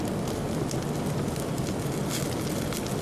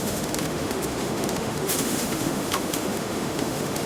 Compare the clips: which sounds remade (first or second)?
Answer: second